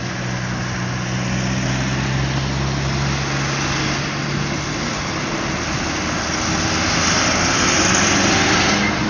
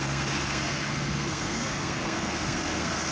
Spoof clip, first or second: second